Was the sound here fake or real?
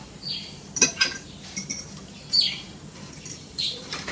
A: fake